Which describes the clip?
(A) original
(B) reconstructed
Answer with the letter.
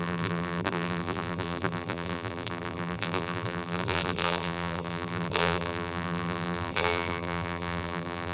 B